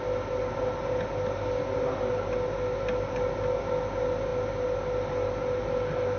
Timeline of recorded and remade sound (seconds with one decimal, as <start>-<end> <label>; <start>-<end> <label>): 0.0-6.2 recorded